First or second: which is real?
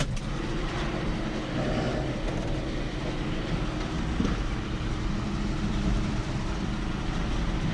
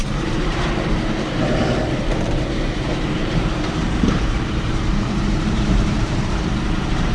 first